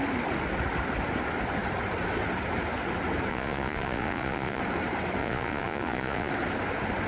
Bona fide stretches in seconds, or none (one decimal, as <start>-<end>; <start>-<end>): 0.0-3.3; 4.6-5.2; 6.3-7.1